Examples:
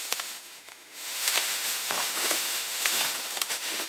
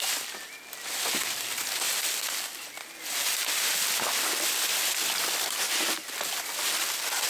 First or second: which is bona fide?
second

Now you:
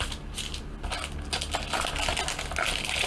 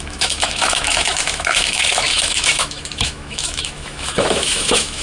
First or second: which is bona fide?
first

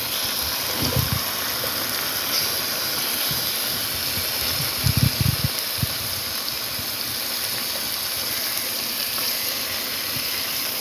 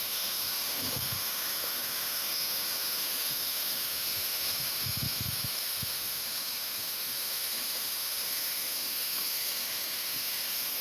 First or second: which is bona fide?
first